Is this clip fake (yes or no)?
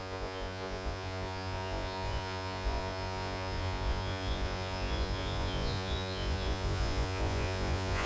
yes